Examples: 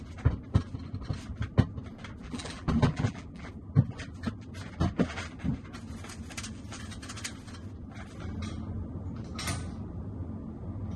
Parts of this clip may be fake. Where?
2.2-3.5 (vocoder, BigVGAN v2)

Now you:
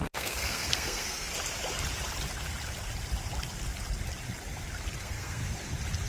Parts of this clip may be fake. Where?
0.0-1.3 (codec, SNAC); 5.0-5.4

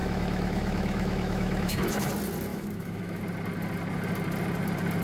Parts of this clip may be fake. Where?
0.0-2.1 (autoencoder, DAC-VAE); 2.5-3.2

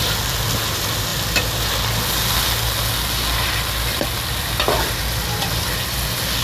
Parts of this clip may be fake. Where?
none

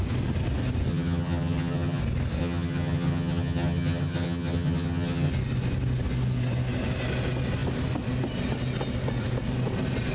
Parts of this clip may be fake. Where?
0.9-2.0 (vocoder, HiFi-GAN); 2.4-5.3